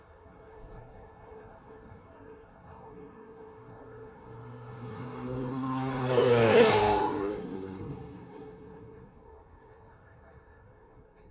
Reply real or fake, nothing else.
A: fake